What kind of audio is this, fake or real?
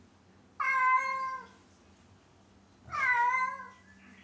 real